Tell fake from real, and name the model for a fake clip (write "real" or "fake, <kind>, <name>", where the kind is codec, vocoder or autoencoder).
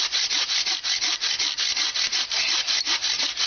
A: real